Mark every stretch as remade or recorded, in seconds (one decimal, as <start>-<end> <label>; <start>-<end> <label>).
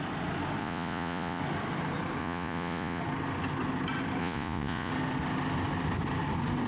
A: 0.0-0.6 recorded; 0.6-1.4 remade; 1.4-2.2 recorded; 2.2-3.0 remade; 3.0-4.2 recorded; 4.2-4.9 remade; 4.9-6.7 recorded